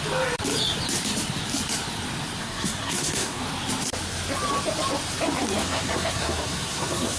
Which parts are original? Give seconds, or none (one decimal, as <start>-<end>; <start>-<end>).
0.0-2.4; 3.4-5.6